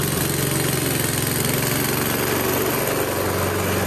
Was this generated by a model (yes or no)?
no